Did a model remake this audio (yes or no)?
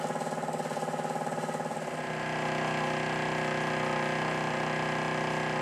no